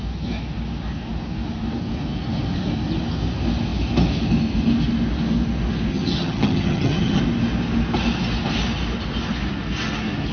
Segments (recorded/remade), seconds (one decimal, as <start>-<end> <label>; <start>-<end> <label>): 0.0-5.9 recorded; 5.9-7.2 remade; 7.2-10.3 recorded